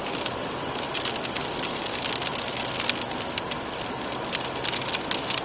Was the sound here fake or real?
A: real